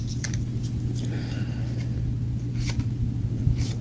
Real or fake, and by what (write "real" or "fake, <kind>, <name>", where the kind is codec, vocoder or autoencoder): real